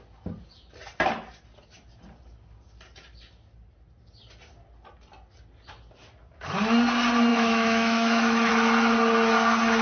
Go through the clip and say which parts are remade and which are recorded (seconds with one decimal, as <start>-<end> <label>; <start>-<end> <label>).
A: 0.0-7.3 recorded; 7.3-8.5 remade; 8.5-9.8 recorded